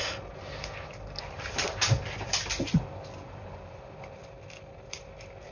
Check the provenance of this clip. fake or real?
real